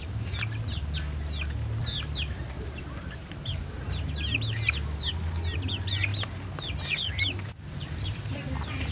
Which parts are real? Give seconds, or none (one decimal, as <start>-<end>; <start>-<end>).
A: 0.0-1.8; 3.7-6.1; 8.4-8.9